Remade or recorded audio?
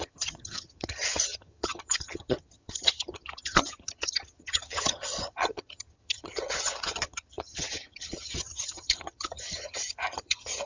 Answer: remade